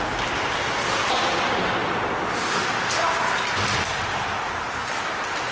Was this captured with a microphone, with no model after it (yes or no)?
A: yes